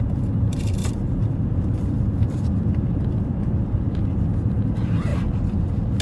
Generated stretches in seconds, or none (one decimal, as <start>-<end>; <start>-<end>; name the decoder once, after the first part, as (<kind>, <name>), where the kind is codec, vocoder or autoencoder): 0.8-4.0 (vocoder, BigVGAN v2)